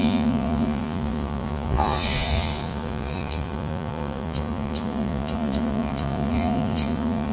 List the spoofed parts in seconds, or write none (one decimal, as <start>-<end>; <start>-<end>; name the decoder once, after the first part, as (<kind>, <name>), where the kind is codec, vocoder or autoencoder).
0.0-7.3 (vocoder, Vocos)